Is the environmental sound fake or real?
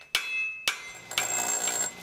real